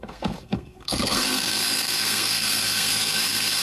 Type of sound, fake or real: fake